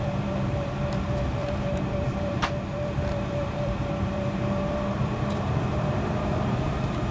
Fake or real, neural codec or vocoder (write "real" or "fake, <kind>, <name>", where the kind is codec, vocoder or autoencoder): fake, vocoder, BigVGAN v2